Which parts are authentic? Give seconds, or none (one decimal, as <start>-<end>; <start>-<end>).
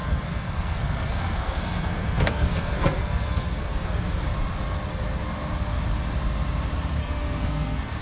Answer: 4.2-7.0